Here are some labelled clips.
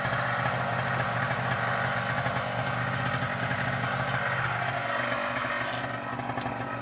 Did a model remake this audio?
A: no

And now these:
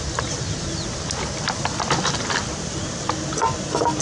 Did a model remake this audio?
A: no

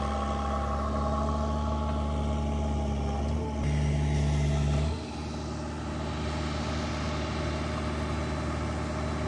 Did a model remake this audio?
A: no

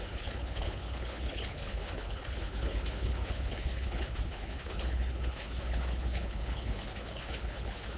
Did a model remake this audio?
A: yes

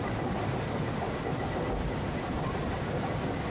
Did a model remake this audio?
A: no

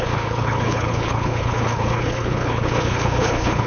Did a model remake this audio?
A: yes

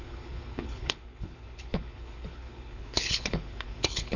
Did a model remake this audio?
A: yes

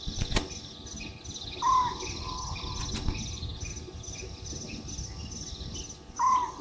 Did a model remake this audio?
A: no